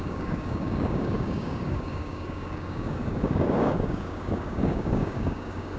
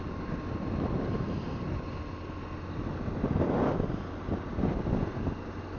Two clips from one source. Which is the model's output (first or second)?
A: first